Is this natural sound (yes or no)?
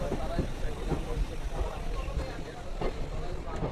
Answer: yes